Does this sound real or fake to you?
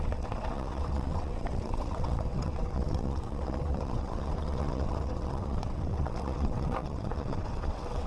fake